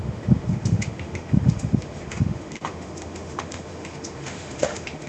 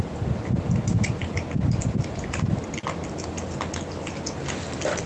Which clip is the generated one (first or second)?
first